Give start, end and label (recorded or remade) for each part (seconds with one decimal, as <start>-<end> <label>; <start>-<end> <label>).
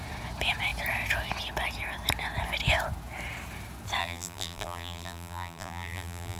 0.0-4.0 recorded; 4.0-6.4 remade